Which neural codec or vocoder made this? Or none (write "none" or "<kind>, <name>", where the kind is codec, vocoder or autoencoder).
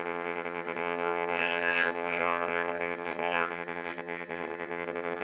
vocoder, HiFi-GAN